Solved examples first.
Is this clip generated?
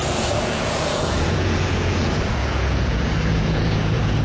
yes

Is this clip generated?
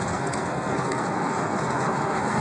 yes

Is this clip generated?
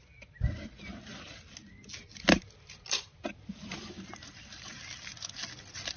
no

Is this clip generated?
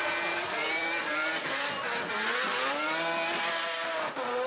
no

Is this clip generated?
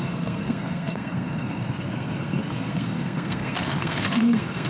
yes